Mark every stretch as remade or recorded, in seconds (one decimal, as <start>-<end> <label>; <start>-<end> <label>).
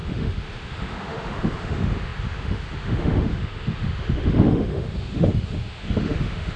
0.0-6.6 remade